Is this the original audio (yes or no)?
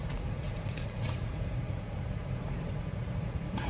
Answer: no